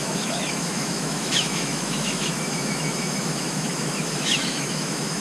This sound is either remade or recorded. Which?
remade